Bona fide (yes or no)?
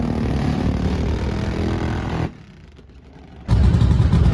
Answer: yes